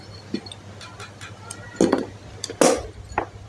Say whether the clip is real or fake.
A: real